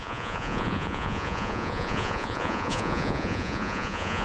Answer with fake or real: fake